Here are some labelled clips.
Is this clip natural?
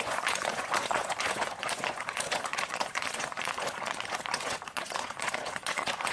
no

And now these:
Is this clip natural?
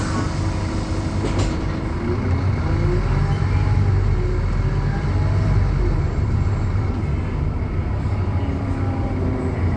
yes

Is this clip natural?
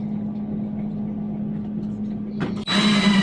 yes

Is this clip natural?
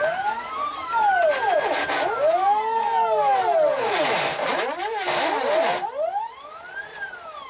yes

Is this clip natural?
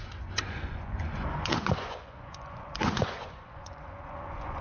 no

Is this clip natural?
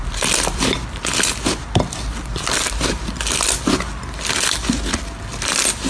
yes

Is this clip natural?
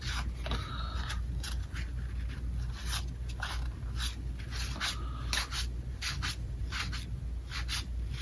yes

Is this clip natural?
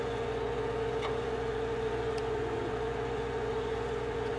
no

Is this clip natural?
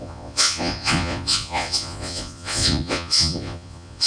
no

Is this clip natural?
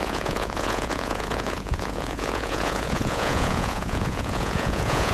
no